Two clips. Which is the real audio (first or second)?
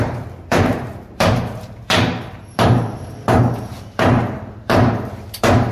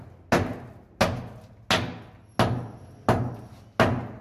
second